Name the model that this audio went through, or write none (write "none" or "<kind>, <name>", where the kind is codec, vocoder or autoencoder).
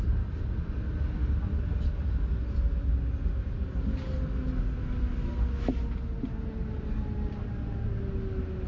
none